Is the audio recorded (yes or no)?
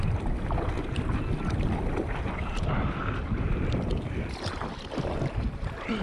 yes